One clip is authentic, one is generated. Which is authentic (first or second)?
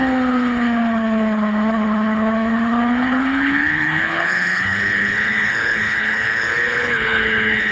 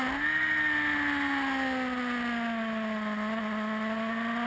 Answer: second